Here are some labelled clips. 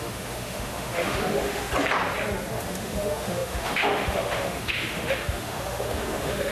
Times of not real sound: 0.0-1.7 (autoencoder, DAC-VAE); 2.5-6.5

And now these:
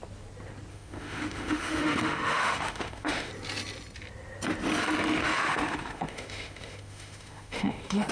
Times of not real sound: 0.7-3.3 (autoencoder, DAC-VAE); 5.2-8.1

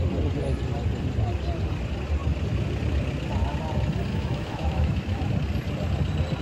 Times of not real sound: 4.1-5.3 (autoencoder, DAC-VAE)

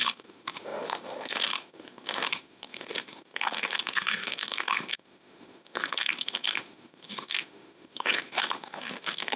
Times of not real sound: 0.0-9.4 (autoencoder, DAC-VAE)

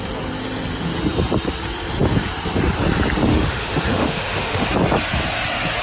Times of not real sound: 3.3-4.7 (autoencoder, DAC-VAE)